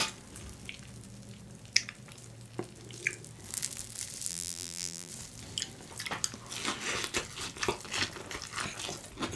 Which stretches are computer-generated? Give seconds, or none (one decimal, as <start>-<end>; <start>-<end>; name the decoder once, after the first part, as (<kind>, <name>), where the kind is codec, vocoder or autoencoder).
4.3-5.1 (vocoder, BigVGAN v2)